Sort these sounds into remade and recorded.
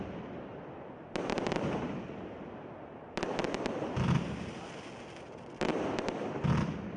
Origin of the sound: recorded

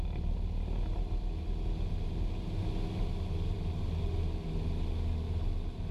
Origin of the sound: recorded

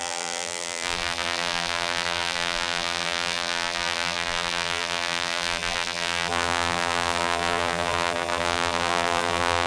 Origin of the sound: remade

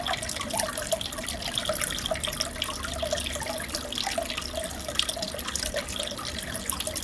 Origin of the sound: recorded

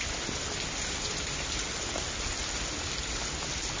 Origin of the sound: recorded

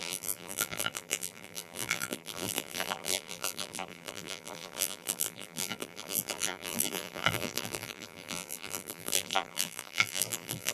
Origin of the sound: remade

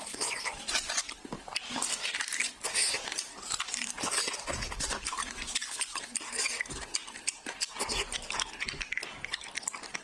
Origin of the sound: remade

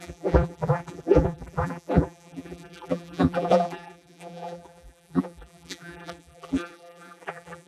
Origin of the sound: remade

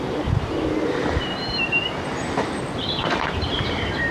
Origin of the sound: remade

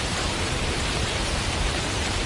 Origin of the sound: remade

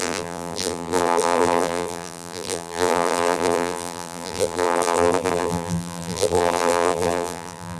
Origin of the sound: remade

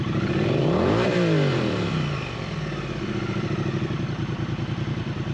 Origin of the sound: remade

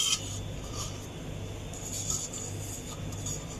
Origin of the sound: remade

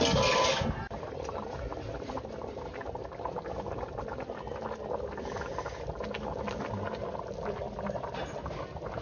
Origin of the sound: recorded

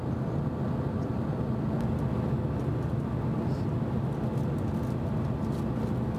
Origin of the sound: recorded